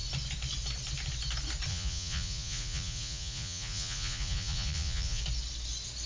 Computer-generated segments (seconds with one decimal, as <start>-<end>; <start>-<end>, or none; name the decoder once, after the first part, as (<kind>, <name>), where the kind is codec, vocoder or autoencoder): 1.7-5.2 (vocoder, Vocos)